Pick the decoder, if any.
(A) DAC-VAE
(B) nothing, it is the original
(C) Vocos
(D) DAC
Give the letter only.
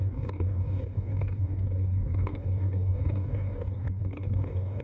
D